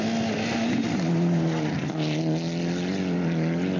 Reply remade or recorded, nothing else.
recorded